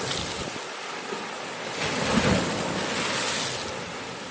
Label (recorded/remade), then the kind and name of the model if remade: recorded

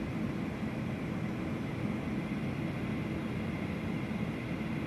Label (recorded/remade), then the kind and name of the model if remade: recorded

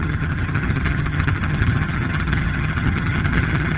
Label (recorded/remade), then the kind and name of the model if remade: remade, vocoder, HiFi-GAN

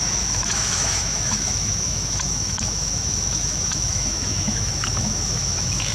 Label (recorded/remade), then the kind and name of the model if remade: remade, autoencoder, DAC-VAE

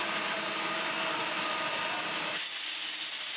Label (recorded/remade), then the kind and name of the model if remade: recorded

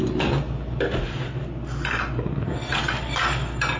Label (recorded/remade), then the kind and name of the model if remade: recorded